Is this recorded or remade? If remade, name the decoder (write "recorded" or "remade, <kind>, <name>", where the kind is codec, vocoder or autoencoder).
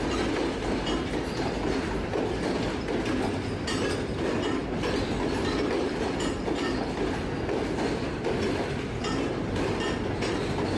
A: recorded